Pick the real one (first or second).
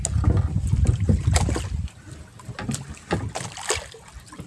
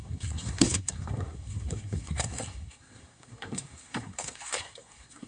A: first